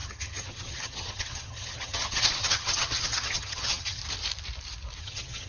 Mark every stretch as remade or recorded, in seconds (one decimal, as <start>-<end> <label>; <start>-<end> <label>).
0.0-4.0 remade; 4.0-5.0 recorded; 5.0-5.5 remade